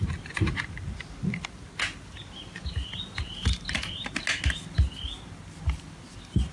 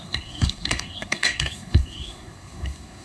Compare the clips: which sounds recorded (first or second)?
first